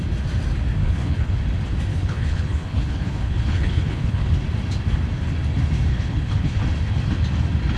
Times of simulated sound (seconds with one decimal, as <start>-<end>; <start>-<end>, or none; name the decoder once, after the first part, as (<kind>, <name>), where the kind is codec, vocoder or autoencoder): 0.8-1.4 (codec, HILCodec); 1.9-4.3; 5.9-6.6